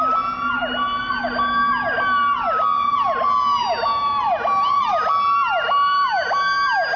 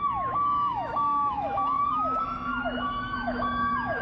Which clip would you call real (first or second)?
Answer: first